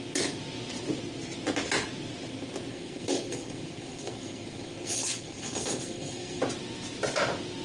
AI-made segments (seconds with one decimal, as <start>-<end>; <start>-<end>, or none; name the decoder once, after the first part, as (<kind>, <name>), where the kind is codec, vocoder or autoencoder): 2.7-6.4 (codec, SNAC)